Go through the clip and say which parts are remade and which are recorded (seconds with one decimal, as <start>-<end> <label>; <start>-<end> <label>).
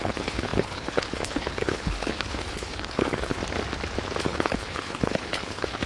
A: 0.0-3.4 remade; 3.4-4.2 recorded; 4.2-5.9 remade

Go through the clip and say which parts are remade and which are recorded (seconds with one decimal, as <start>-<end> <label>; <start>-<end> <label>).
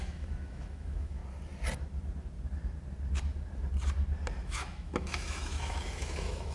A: 0.0-1.2 remade; 1.2-4.4 recorded; 4.4-6.5 remade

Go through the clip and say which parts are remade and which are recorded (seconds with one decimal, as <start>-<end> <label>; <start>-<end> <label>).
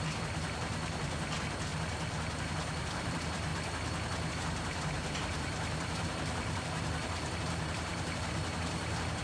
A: 0.0-1.7 remade; 1.7-2.4 recorded; 2.4-3.5 remade; 3.5-4.3 recorded; 4.3-9.2 remade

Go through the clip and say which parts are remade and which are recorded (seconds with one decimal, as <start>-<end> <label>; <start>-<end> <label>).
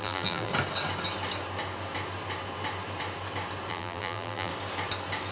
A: 0.0-0.5 remade; 0.5-3.7 recorded; 3.7-4.5 remade; 4.5-5.3 recorded